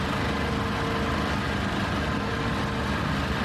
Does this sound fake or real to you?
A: real